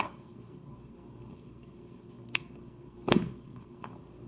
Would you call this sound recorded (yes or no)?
no